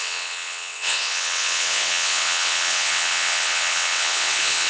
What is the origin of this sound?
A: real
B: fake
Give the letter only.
B